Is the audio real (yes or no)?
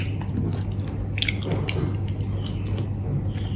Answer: yes